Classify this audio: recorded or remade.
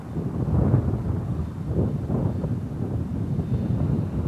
recorded